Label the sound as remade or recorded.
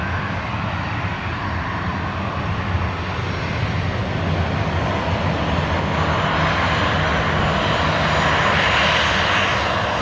recorded